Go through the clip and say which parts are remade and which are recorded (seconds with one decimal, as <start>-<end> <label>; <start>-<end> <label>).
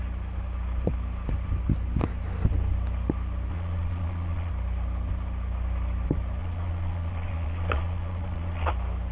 0.0-3.5 recorded; 3.5-4.5 remade; 4.5-6.4 recorded; 6.4-8.7 remade; 8.7-9.1 recorded